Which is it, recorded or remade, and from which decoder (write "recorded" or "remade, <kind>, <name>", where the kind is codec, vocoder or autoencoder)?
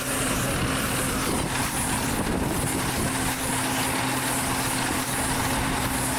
recorded